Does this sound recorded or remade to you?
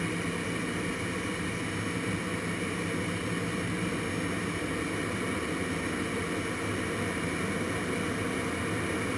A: recorded